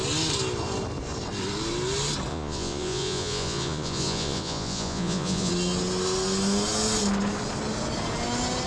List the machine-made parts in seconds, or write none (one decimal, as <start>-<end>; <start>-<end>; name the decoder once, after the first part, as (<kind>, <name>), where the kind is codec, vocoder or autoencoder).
2.3-5.5 (vocoder, Vocos)